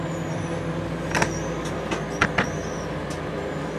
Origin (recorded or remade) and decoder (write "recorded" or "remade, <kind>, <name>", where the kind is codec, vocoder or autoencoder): recorded